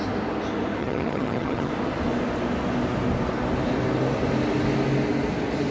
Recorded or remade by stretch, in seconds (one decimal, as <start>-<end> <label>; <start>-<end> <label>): 0.0-0.8 recorded; 0.8-1.7 remade; 1.7-5.7 recorded